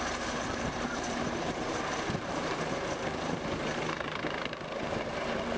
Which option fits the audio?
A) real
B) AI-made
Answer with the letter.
B